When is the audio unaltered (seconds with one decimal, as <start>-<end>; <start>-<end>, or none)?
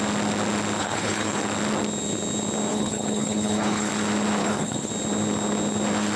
0.0-0.8; 1.4-2.7; 3.9-4.4; 4.9-6.2